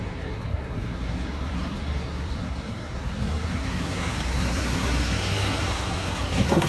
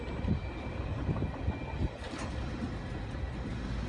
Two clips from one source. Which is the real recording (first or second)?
second